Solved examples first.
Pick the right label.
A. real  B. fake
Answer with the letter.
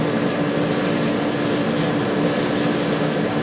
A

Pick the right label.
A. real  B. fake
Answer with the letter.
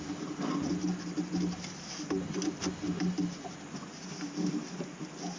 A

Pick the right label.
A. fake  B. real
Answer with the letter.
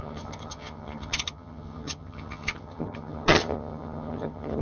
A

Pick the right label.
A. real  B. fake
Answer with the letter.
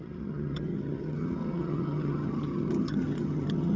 B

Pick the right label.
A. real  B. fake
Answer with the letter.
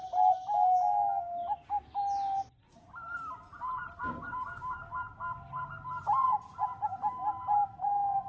A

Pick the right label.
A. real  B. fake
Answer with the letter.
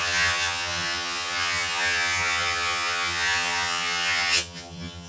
B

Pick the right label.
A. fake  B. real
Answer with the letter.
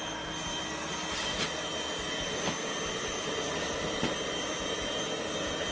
B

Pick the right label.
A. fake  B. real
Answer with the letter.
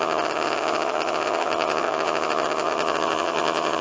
A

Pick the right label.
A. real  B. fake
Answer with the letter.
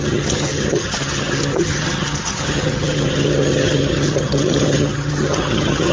B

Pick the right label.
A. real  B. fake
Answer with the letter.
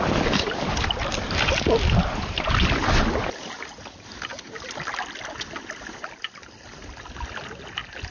A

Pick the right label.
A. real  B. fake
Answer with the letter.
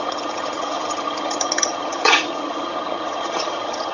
B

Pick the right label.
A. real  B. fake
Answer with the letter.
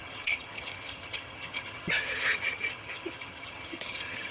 B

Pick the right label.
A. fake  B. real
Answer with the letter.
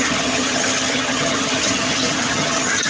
A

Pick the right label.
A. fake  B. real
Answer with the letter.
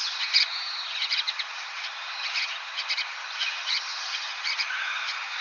A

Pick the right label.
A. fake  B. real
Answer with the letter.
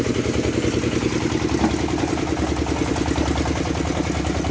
B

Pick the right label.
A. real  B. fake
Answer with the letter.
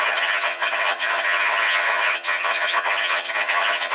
B